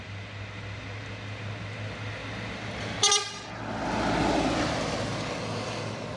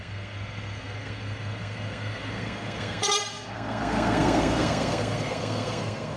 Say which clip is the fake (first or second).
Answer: second